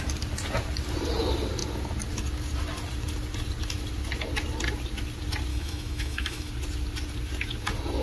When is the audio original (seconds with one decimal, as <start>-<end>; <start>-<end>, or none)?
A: 0.0-5.5; 6.5-8.0